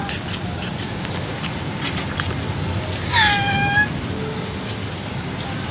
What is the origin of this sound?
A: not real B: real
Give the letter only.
B